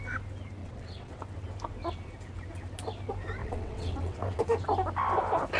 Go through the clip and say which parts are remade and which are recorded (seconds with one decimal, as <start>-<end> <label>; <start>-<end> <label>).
0.0-0.6 recorded; 0.6-1.2 remade; 1.2-3.4 recorded; 3.4-4.5 remade; 4.5-5.6 recorded